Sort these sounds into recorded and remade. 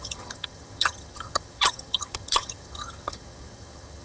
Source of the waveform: remade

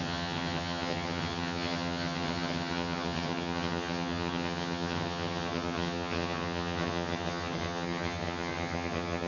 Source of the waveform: remade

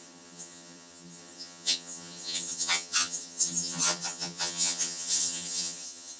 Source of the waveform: remade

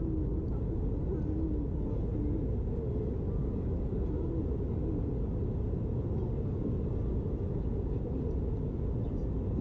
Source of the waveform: recorded